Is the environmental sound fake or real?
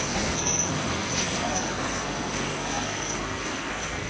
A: fake